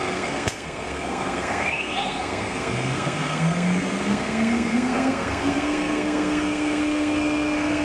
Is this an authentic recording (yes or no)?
no